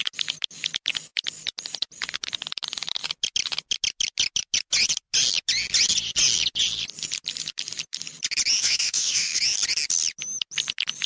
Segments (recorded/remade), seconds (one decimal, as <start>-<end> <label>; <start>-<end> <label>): 0.0-8.6 recorded; 8.6-9.4 remade; 9.4-11.1 recorded